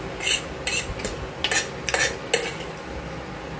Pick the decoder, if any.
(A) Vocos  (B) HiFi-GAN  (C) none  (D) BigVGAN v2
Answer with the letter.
C